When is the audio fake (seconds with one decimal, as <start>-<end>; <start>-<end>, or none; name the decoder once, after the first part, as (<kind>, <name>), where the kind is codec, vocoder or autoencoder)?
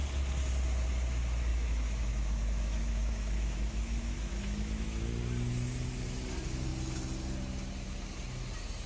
1.5-5.1 (autoencoder, DAC-VAE)